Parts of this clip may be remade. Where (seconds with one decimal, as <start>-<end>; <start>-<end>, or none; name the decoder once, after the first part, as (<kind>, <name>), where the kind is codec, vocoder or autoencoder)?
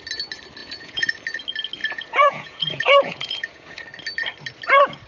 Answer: 0.6-1.1 (vocoder, Vocos); 1.8-3.8